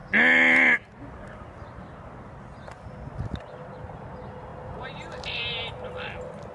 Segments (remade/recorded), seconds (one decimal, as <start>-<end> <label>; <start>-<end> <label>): 0.0-6.5 recorded